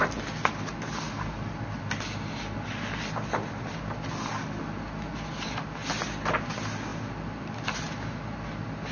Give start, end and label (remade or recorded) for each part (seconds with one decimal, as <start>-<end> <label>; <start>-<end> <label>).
0.0-8.9 recorded